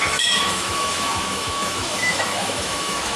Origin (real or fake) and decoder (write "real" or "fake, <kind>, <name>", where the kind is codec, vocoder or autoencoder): fake, autoencoder, DAC-VAE